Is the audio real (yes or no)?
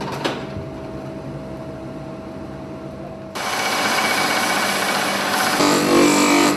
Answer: yes